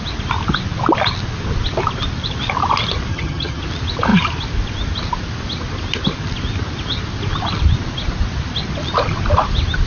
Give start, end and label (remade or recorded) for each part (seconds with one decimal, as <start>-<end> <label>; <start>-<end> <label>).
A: 0.0-3.1 recorded; 3.1-3.6 remade; 3.6-9.9 recorded